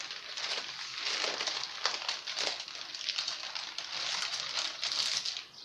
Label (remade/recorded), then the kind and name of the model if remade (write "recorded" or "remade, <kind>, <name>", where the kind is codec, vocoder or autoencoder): recorded